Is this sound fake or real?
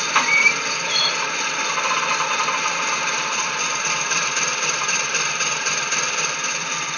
fake